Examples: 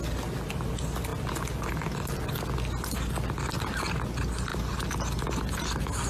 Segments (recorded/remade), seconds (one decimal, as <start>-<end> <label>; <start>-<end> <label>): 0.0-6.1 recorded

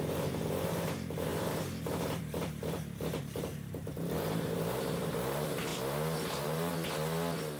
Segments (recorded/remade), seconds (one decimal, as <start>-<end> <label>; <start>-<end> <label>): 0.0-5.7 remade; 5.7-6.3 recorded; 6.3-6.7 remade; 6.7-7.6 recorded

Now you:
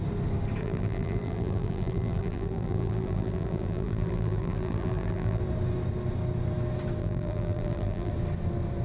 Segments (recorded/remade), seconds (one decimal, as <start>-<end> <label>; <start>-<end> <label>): 0.0-0.6 recorded; 0.6-5.4 remade; 5.4-7.0 recorded; 7.0-8.1 remade; 8.1-8.8 recorded

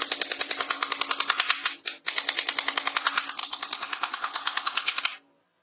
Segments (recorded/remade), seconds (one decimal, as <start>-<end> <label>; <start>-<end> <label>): 0.0-3.4 recorded; 3.4-5.0 remade; 5.0-5.6 recorded

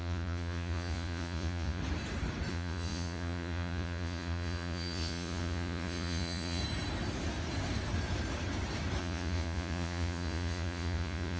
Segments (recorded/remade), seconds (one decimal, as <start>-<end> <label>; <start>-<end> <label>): 0.0-1.8 remade; 1.8-2.5 recorded; 2.5-6.6 remade; 6.6-9.0 recorded; 9.0-11.4 remade

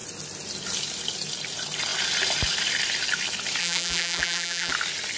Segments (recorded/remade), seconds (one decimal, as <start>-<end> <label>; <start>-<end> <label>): 0.0-3.6 recorded; 3.6-4.7 remade; 4.7-5.2 recorded

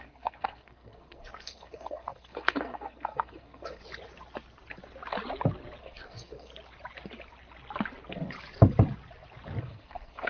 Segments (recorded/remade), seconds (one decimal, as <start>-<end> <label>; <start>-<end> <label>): 0.0-3.8 remade; 3.8-5.8 recorded; 5.8-6.5 remade; 6.5-9.6 recorded; 9.6-10.3 remade

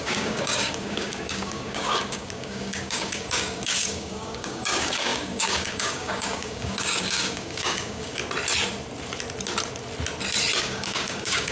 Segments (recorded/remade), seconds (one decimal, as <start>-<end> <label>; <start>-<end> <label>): 0.0-8.2 remade; 8.2-10.6 recorded; 10.6-11.5 remade